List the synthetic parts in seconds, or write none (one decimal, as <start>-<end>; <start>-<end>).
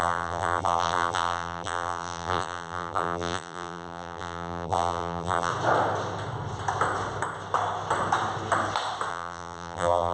0.0-5.5; 9.1-10.1